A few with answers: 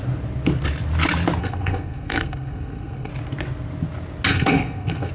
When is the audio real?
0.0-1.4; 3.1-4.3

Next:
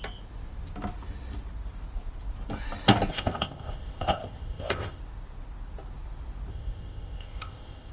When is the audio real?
0.0-3.1; 5.0-6.5

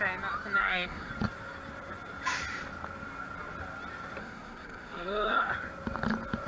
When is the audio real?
0.0-0.6; 1.1-4.2; 5.5-6.5